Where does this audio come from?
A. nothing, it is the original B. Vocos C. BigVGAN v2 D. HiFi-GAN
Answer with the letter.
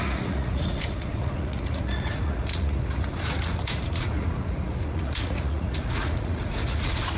B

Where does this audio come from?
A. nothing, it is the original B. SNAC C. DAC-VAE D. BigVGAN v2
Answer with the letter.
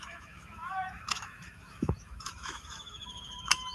C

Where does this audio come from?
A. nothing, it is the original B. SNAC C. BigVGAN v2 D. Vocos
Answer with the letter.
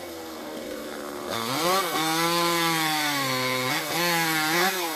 B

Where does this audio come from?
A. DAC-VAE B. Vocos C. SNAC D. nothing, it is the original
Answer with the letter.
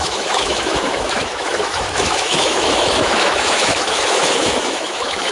A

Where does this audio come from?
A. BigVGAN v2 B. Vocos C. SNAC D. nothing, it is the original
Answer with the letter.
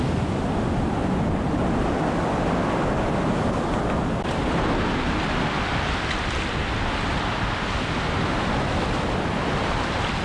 D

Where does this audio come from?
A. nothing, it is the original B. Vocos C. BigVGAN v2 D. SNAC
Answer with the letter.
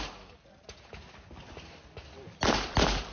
A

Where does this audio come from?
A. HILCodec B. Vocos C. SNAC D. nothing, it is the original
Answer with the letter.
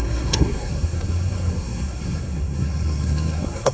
C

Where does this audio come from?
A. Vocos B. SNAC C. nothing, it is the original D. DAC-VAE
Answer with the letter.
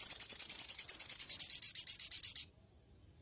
C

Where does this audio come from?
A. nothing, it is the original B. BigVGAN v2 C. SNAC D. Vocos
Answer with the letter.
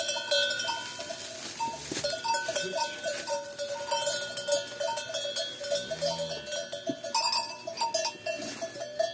A